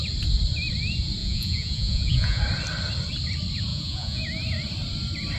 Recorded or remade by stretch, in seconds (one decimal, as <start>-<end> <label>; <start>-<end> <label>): 0.0-1.2 recorded; 1.2-2.4 remade; 2.4-3.7 recorded; 3.7-4.2 remade; 4.2-5.4 recorded